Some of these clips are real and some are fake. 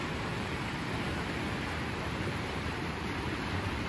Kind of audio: fake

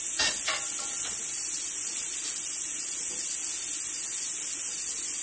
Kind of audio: real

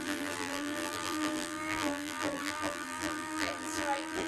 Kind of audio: fake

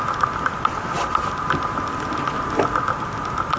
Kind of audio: real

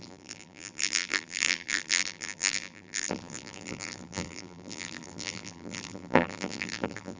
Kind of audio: fake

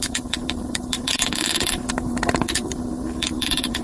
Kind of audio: fake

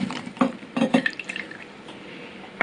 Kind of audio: fake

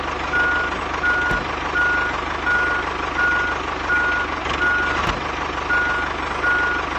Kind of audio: real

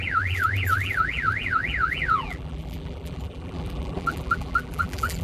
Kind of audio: fake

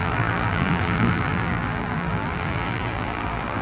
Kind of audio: fake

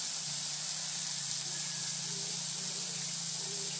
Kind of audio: real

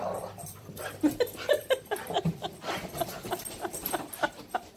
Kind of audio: fake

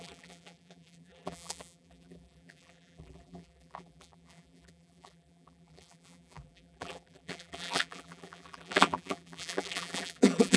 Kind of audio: fake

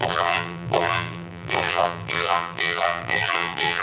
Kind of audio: fake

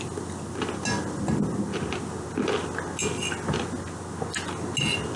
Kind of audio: real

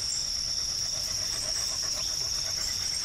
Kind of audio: fake